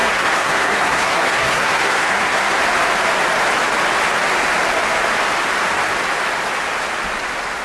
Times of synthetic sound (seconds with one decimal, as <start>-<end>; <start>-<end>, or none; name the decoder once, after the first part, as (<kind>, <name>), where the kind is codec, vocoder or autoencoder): 0.0-2.6 (codec, SNAC)